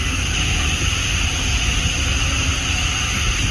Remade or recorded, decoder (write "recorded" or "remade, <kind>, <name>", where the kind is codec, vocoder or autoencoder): recorded